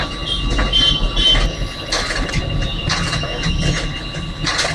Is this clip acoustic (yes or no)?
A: yes